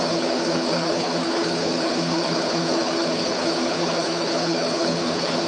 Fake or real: fake